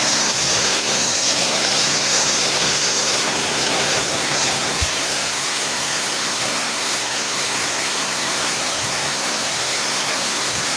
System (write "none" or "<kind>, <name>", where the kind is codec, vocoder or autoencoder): codec, SNAC